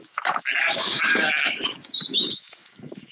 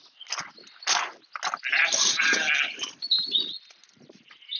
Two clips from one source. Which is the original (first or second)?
second